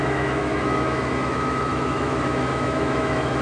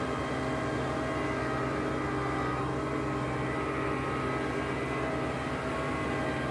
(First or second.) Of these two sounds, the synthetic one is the first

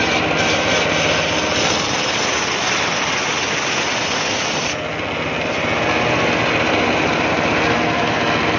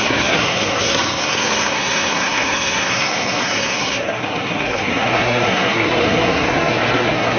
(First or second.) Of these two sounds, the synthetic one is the second